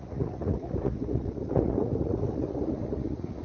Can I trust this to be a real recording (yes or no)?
no